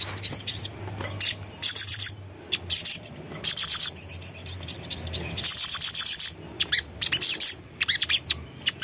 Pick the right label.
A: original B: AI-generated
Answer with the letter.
A